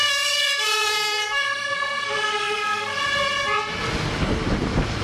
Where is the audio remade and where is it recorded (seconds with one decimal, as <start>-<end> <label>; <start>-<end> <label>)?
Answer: 0.0-3.0 remade; 3.0-5.0 recorded